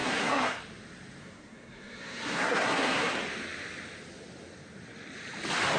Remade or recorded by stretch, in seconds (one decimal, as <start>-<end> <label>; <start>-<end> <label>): 0.0-0.6 remade; 0.6-1.2 recorded; 1.2-3.1 remade; 3.1-5.8 recorded